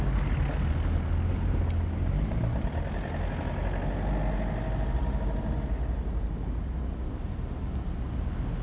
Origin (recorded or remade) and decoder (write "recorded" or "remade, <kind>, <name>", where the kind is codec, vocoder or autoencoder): recorded